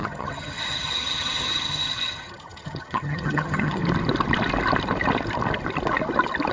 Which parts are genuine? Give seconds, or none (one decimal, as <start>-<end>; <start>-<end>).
3.8-6.5